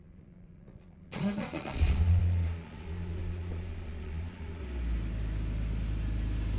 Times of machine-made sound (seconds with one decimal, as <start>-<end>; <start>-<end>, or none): 0.0-4.6